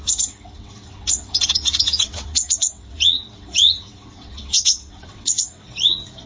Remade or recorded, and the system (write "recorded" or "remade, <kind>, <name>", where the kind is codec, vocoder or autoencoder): remade, vocoder, WaveNeXt